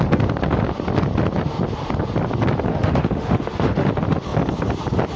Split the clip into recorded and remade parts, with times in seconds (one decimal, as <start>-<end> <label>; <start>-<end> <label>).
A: 0.0-2.7 recorded; 2.7-3.9 remade; 3.9-5.2 recorded